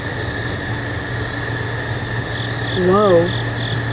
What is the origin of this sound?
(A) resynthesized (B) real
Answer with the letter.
B